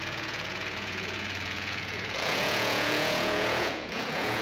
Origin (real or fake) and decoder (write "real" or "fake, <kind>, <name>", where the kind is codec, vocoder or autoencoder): fake, vocoder, Vocos